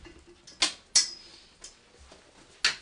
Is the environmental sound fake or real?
real